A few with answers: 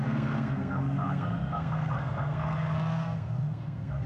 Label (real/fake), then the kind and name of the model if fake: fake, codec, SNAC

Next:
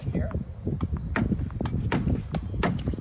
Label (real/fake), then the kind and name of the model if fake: real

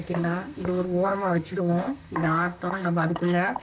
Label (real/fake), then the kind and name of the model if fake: fake, codec, SNAC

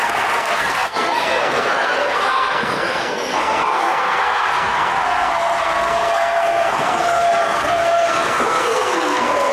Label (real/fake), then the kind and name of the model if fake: fake, codec, SNAC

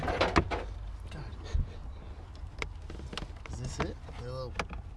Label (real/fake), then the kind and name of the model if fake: real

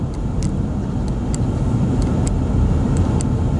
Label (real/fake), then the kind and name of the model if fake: real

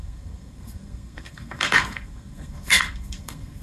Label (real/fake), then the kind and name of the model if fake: fake, codec, SNAC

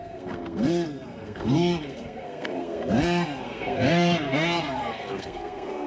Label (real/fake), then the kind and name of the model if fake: fake, codec, SNAC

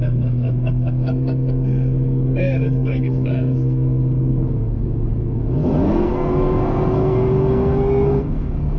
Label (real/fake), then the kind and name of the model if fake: fake, codec, SNAC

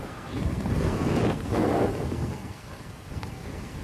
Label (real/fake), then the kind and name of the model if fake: fake, codec, SNAC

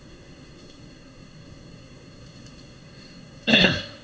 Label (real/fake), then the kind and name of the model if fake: fake, codec, SNAC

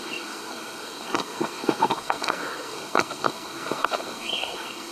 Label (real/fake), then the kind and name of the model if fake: fake, codec, SNAC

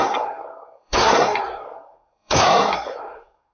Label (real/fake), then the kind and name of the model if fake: fake, codec, SNAC